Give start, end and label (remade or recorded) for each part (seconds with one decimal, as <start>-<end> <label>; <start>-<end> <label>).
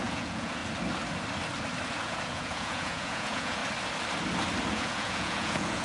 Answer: 0.0-0.6 remade; 0.6-2.0 recorded; 2.0-3.6 remade; 3.6-4.7 recorded; 4.7-5.8 remade